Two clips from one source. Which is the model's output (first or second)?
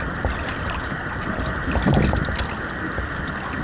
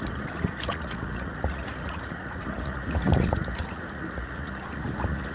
second